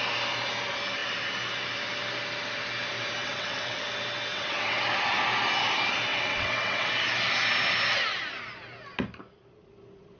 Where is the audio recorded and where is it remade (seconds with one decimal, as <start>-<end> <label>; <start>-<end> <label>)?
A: 0.0-3.2 recorded; 3.2-3.8 remade; 3.8-4.3 recorded; 4.3-4.8 remade; 4.8-6.1 recorded; 6.1-6.9 remade; 6.9-10.2 recorded